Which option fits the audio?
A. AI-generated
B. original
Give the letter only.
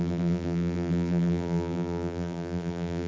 A